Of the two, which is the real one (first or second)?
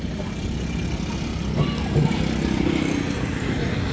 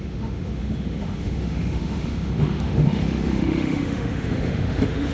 first